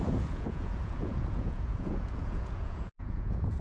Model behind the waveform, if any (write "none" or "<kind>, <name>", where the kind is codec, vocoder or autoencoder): vocoder, Vocos